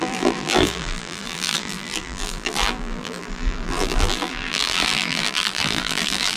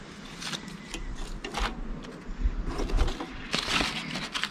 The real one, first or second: second